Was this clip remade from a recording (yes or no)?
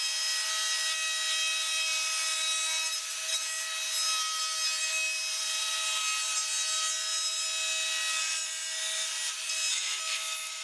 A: no